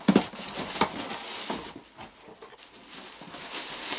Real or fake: real